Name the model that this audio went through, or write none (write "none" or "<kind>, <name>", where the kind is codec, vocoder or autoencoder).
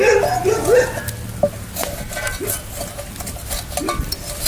none